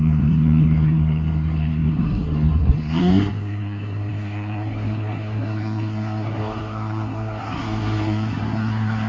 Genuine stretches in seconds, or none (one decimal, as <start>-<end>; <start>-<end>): none